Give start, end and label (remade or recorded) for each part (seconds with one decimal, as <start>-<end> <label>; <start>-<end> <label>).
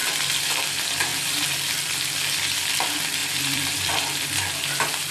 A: 0.0-0.7 remade; 0.7-1.1 recorded; 1.1-1.9 remade; 1.9-3.2 recorded; 3.2-3.9 remade; 3.9-5.1 recorded